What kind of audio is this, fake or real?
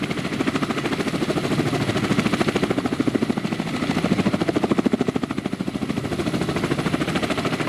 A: real